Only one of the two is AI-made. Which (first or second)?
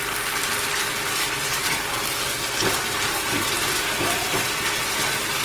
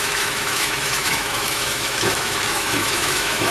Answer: second